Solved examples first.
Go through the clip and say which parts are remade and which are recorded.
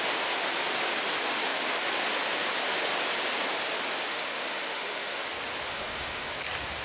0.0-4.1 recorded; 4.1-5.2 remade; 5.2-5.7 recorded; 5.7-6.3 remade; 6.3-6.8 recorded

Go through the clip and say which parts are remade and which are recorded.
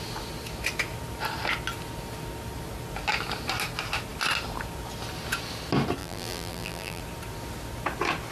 0.0-6.0 recorded; 6.0-7.0 remade; 7.0-8.3 recorded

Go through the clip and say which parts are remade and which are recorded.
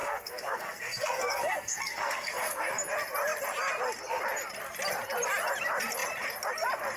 0.0-2.6 remade; 2.6-7.0 recorded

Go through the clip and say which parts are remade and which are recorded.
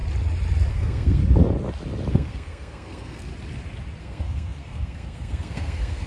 0.0-0.7 recorded; 0.7-1.2 remade; 1.2-2.1 recorded; 2.1-3.3 remade; 3.3-4.0 recorded; 4.0-6.1 remade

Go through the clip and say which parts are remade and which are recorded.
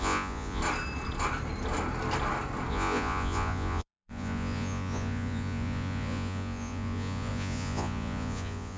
0.0-0.6 remade; 0.6-2.7 recorded; 2.7-8.8 remade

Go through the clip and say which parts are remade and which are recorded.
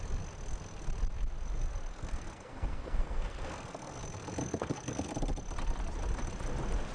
0.0-1.9 recorded; 1.9-4.0 remade; 4.0-4.4 recorded; 4.4-5.1 remade; 5.1-6.9 recorded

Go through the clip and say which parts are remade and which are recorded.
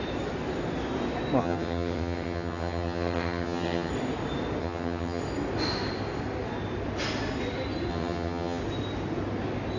0.0-1.4 recorded; 1.4-3.9 remade; 3.9-4.6 recorded; 4.6-5.2 remade; 5.2-7.9 recorded; 7.9-8.6 remade; 8.6-9.8 recorded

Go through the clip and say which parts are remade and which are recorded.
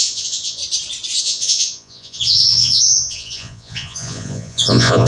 0.0-0.6 remade; 0.6-1.2 recorded; 1.2-5.1 remade